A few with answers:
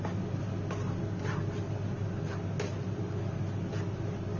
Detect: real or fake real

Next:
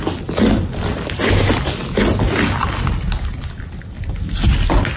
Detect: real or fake real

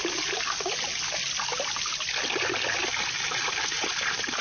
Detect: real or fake real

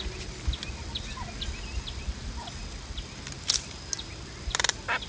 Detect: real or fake real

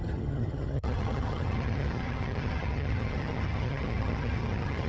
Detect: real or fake fake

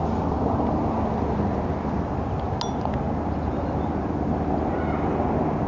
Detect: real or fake real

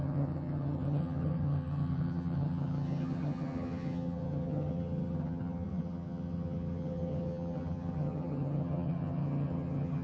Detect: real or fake fake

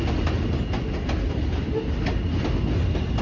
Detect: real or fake real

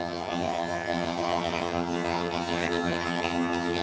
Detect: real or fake fake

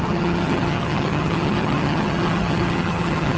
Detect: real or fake fake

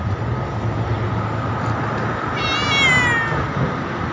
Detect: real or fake real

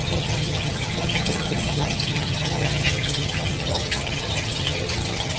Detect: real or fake fake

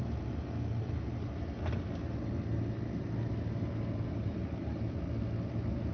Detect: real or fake real